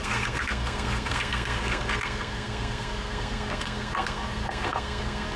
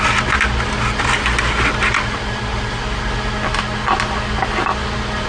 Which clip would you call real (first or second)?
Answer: second